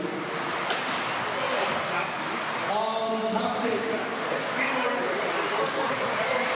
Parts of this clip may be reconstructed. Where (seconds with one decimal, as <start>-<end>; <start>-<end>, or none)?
none